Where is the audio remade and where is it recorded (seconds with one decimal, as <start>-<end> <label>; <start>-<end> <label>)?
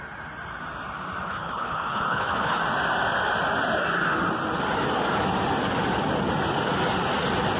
0.0-1.3 recorded; 1.3-2.6 remade; 2.6-7.6 recorded